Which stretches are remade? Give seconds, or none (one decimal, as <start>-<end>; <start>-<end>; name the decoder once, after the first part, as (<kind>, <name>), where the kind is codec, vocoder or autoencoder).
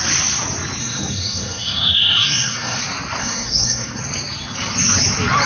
0.8-2.8 (codec, SNAC); 3.2-4.0